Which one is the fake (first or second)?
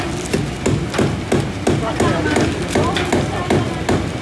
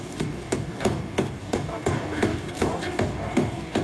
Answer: second